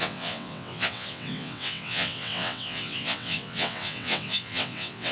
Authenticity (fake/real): fake